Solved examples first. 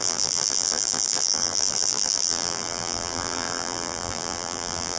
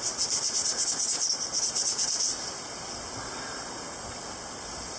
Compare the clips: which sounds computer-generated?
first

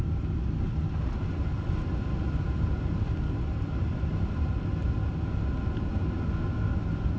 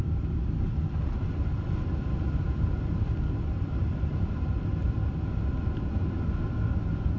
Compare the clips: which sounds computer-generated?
second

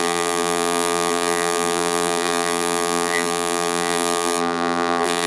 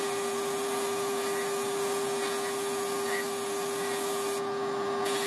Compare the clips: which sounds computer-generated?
first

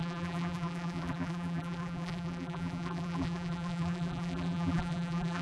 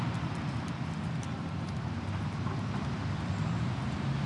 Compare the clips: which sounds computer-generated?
first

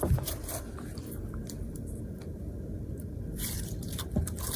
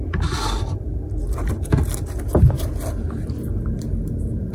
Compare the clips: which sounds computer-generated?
first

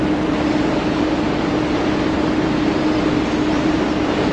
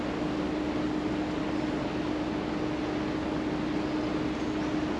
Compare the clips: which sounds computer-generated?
first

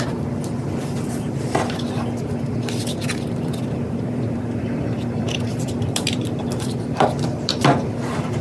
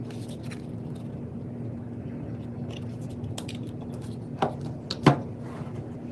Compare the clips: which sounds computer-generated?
first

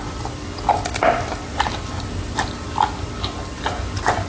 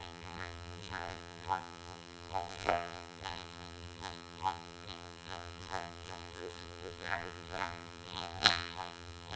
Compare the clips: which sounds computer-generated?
second